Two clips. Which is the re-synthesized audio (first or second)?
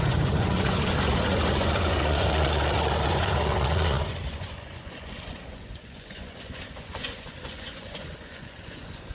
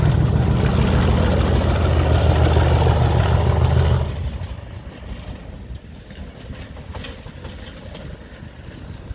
first